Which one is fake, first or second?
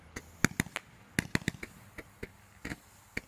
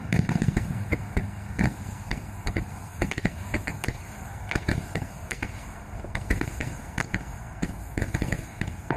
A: second